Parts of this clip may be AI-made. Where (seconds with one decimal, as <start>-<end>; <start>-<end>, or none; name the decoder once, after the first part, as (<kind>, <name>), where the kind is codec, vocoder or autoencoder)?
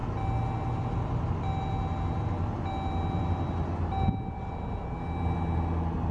none